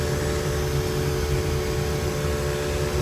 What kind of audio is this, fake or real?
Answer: real